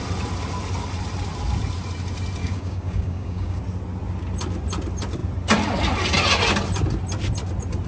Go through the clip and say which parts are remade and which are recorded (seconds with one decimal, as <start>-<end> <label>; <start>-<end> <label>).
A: 0.0-2.4 recorded; 2.4-3.6 remade; 3.6-7.9 recorded